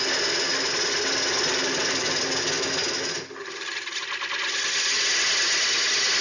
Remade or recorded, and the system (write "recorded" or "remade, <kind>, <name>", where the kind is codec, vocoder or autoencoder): recorded